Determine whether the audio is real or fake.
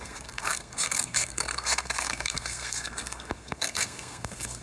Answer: fake